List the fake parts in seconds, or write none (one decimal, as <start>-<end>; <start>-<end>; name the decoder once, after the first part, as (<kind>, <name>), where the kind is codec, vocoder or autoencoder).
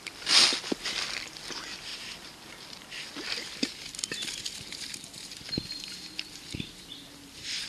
0.0-0.5 (vocoder, BigVGAN v2); 1.1-7.7